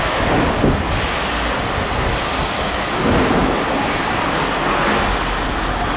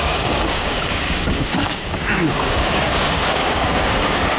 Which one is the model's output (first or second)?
second